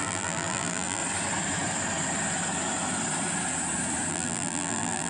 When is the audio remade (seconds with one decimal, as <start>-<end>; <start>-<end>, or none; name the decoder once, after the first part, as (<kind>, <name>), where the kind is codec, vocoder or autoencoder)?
0.0-1.0 (vocoder, BigVGAN v2); 4.1-5.1